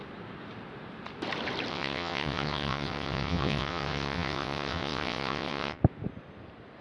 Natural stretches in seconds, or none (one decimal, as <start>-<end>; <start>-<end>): 0.0-1.7; 5.8-6.8